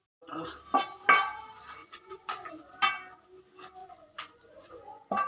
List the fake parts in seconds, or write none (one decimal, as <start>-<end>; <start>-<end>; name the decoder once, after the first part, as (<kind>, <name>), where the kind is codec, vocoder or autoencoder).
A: 1.8-2.5 (vocoder, Vocos); 3.8-5.3